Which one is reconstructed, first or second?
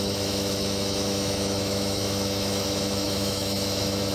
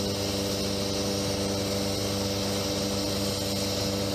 first